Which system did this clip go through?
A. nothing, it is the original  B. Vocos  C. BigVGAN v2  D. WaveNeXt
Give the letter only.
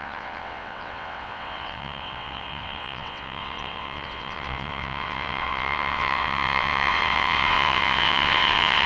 D